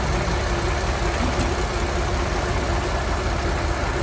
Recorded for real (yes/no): yes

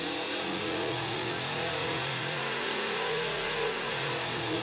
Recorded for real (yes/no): no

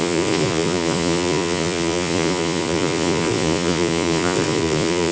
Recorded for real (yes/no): no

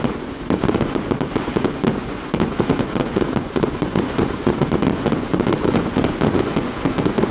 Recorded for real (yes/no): no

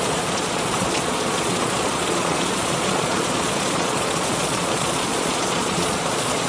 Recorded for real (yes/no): no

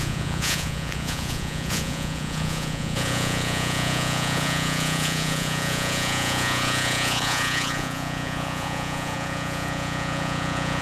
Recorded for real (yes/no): no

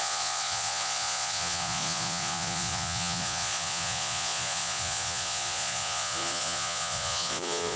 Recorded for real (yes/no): no